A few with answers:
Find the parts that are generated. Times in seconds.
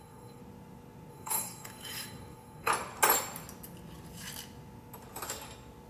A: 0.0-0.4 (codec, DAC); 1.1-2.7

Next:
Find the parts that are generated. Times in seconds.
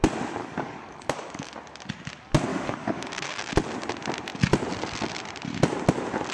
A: 0.4-1.5 (codec, DAC); 2.5-3.5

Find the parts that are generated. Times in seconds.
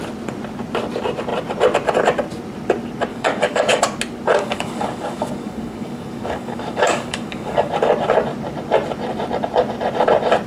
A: 3.1-3.8 (codec, DAC); 4.3-7.7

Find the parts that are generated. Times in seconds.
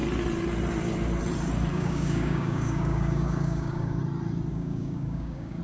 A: 1.7-4.0 (codec, DAC); 4.5-5.6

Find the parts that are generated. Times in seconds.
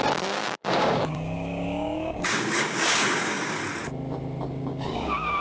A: 0.0-3.6 (codec, DAC); 4.5-5.4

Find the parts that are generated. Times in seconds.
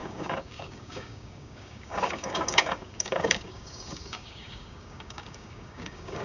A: 0.0-6.2 (codec, DAC)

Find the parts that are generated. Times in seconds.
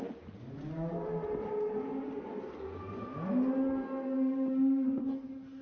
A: 5.0-5.6 (codec, DAC)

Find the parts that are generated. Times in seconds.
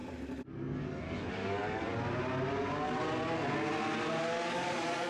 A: 1.3-1.9 (codec, DAC); 4.2-5.1